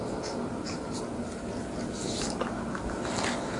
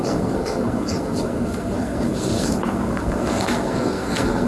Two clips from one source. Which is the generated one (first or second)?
second